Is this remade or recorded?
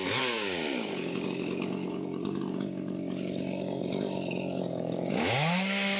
remade